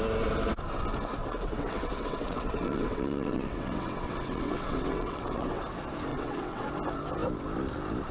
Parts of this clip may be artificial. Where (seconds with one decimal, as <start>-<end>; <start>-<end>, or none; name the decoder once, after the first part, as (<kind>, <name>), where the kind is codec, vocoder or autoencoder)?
1.2-5.6 (vocoder, WaveNeXt); 6.1-6.7